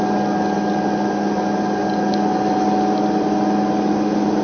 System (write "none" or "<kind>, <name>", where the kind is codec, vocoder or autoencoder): none